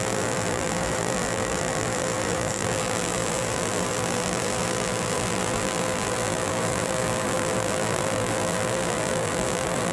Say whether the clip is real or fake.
fake